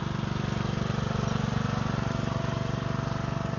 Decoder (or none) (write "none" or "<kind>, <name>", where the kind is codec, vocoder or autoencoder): none